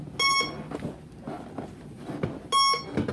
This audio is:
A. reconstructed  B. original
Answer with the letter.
B